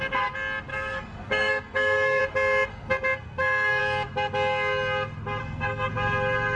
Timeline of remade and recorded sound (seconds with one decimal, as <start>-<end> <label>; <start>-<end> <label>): 0.0-0.7 recorded; 0.7-2.2 remade; 2.2-2.7 recorded; 2.7-3.8 remade; 3.8-5.4 recorded; 5.4-5.9 remade; 5.9-6.6 recorded